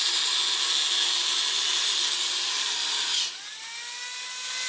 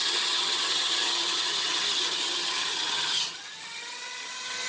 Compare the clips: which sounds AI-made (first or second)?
second